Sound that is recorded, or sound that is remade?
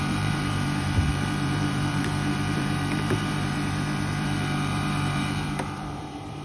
remade